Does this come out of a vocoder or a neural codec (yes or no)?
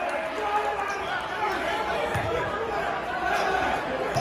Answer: yes